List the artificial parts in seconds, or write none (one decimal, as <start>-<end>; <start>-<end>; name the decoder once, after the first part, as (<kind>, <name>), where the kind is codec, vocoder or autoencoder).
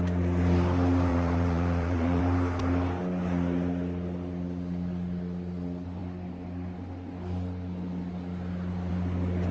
1.1-2.2 (vocoder, Vocos)